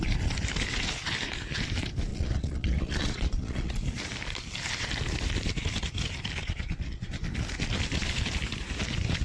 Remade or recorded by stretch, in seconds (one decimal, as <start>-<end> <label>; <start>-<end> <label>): 0.0-2.1 recorded; 2.1-3.7 remade; 3.7-6.4 recorded; 6.4-7.1 remade; 7.1-9.2 recorded